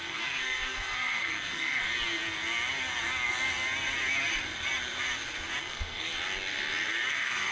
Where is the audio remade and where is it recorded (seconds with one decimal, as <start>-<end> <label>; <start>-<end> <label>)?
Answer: 0.0-1.9 remade; 1.9-5.6 recorded; 5.6-6.1 remade; 6.1-7.1 recorded; 7.1-7.5 remade